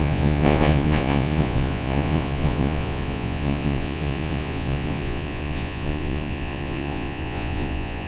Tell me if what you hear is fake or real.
fake